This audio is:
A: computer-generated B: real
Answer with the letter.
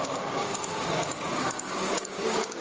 A